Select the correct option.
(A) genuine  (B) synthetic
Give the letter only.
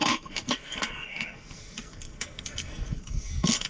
B